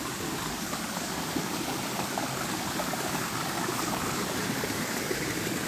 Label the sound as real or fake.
fake